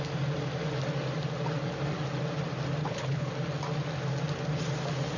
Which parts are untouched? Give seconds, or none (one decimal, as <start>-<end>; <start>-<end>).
0.0-2.8; 3.3-5.2